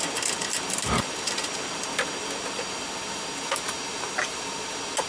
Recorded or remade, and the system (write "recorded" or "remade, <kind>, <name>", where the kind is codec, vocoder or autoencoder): recorded